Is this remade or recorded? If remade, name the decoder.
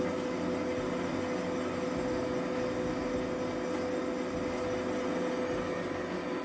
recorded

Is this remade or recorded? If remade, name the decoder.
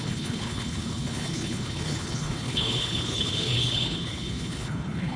remade, codec, HILCodec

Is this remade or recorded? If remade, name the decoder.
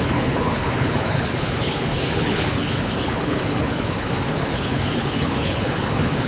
remade, codec, HILCodec